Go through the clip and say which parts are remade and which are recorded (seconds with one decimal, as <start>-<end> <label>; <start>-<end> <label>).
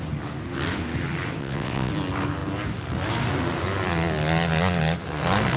0.0-1.4 recorded; 1.4-1.9 remade; 1.9-5.6 recorded